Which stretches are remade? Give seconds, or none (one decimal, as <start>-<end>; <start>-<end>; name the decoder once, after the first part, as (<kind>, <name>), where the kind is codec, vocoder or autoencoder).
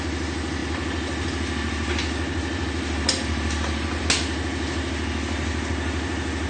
none